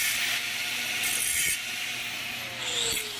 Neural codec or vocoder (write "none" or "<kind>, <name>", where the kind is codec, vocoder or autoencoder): none